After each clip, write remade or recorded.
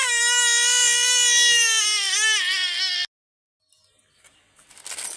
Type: recorded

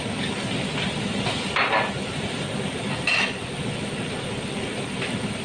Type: recorded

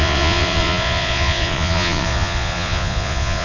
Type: remade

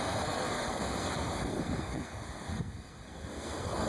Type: remade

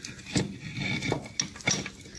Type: recorded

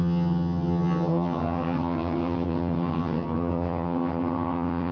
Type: remade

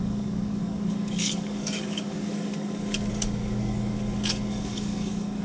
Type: remade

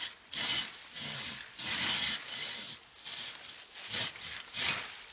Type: recorded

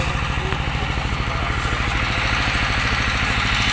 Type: recorded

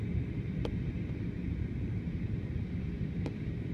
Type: recorded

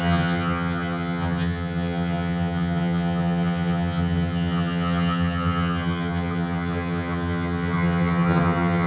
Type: remade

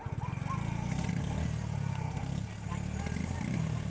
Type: recorded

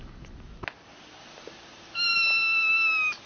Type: recorded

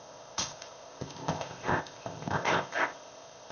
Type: remade